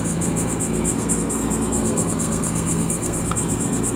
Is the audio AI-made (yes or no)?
yes